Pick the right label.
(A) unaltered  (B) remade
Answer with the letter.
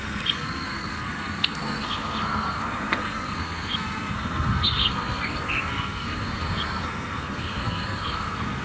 B